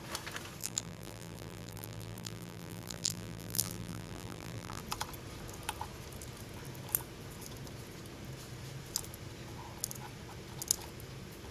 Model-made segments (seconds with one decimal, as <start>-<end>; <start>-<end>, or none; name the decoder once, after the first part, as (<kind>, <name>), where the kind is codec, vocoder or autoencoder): 0.6-4.8 (vocoder, BigVGAN v2)